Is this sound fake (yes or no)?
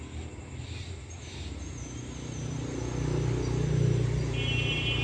no